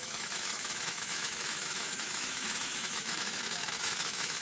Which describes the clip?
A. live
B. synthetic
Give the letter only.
B